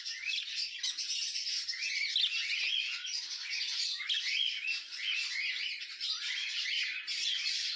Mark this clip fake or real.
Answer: real